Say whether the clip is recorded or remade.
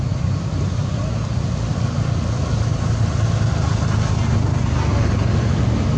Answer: recorded